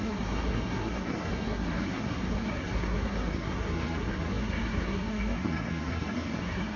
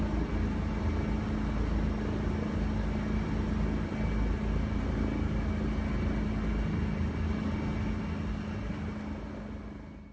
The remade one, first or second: first